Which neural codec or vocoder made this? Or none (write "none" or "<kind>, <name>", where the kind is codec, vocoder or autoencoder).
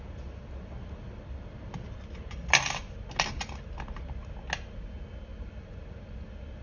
none